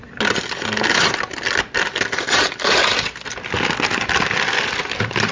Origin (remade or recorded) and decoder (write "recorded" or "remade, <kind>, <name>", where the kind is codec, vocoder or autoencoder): recorded